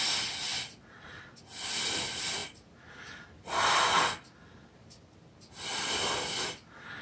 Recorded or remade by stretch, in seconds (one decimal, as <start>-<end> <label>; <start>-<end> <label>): 0.0-7.0 recorded